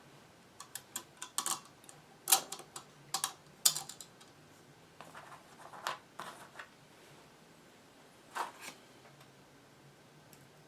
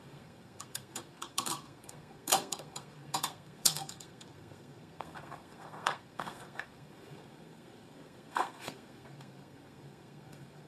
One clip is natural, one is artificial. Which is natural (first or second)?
first